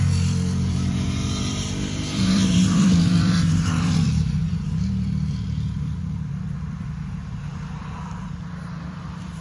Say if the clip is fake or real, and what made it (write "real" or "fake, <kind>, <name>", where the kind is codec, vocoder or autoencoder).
fake, vocoder, BigVGAN v2